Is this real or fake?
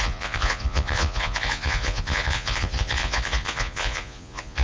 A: fake